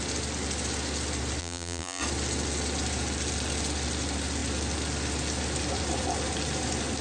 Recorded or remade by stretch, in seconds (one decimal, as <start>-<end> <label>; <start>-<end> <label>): 0.0-1.4 recorded; 1.4-2.0 remade; 2.0-7.0 recorded

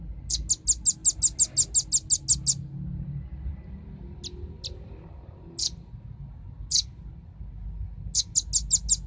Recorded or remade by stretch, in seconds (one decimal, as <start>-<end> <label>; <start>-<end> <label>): 0.0-9.1 recorded